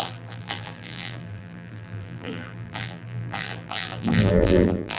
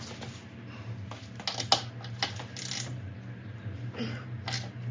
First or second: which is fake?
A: first